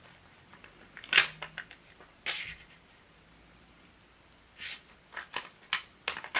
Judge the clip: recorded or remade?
recorded